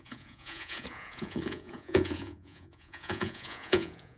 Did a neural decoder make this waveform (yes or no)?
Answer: yes